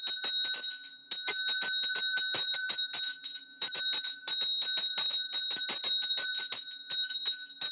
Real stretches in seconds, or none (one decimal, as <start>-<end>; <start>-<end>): 0.0-7.7